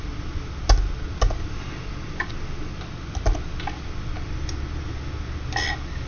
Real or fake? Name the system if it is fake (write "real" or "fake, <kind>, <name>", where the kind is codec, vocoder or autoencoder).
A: real